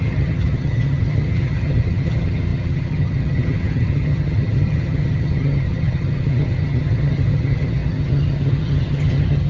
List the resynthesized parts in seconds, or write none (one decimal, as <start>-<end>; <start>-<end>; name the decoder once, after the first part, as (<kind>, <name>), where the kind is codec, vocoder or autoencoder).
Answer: 0.0-9.5 (vocoder, HiFi-GAN)